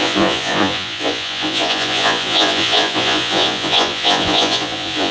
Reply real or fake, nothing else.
fake